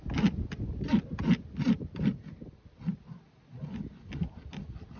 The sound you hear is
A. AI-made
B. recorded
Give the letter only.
B